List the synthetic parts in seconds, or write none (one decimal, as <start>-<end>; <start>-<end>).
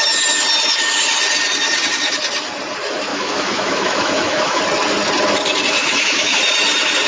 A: 3.1-4.6; 5.8-6.4